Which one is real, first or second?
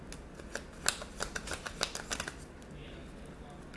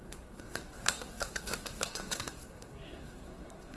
first